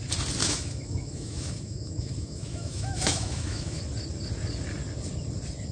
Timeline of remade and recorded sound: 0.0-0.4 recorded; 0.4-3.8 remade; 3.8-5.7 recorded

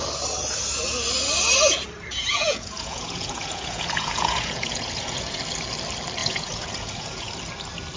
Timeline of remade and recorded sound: 0.0-2.1 recorded; 2.1-5.4 remade; 5.4-6.2 recorded; 6.2-7.3 remade; 7.3-8.0 recorded

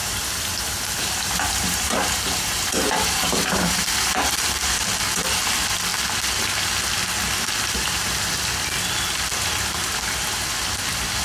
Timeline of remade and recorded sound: 0.0-4.9 remade; 4.9-9.3 recorded; 9.3-10.6 remade; 10.6-11.2 recorded